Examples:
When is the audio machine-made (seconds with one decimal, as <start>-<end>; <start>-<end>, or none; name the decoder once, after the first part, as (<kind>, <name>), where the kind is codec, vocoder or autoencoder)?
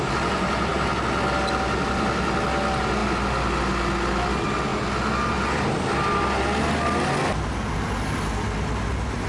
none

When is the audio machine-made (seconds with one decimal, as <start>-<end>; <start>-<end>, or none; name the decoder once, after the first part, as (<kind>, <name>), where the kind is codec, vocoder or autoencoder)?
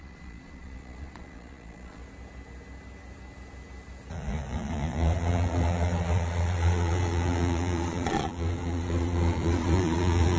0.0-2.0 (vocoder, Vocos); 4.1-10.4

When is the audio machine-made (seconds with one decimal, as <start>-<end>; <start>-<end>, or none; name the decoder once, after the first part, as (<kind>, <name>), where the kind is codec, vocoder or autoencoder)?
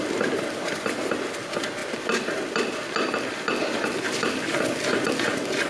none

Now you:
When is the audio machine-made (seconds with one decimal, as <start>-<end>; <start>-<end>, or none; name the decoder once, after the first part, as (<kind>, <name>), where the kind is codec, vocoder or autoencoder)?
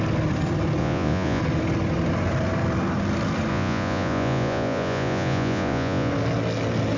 0.8-1.4 (vocoder, Vocos); 3.5-6.1